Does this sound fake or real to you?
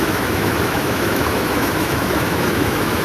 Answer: fake